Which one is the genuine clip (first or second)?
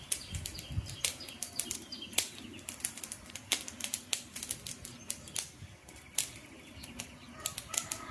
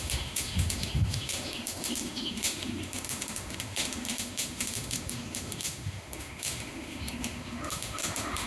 first